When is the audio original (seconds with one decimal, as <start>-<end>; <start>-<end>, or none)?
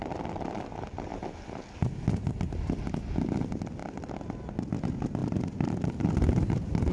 0.0-6.9